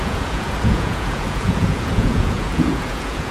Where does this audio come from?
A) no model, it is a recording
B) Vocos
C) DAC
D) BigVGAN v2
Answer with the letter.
B